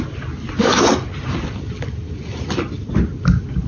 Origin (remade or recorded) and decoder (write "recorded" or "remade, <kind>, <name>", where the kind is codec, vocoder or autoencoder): recorded